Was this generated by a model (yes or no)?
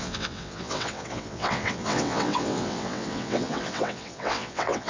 yes